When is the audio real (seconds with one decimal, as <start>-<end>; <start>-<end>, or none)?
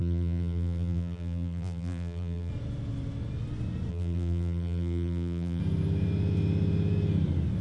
2.5-3.9; 5.6-7.6